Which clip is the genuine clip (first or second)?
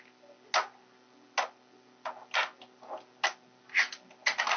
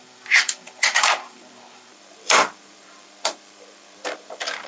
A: first